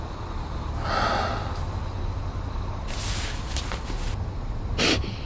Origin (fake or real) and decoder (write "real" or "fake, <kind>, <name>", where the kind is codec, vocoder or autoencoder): real